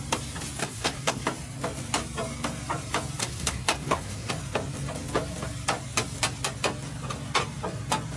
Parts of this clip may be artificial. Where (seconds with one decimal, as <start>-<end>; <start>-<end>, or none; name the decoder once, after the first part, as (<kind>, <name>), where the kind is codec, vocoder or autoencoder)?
0.6-1.2 (codec, SNAC); 3.2-4.3